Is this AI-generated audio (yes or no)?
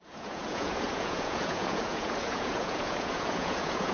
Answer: yes